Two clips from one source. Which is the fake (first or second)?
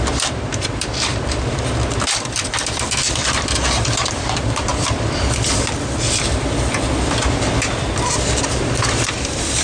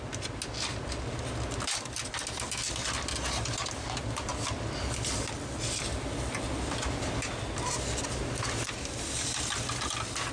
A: first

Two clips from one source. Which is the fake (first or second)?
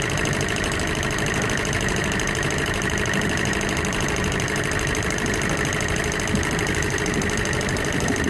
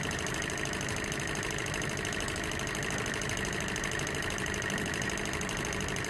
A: first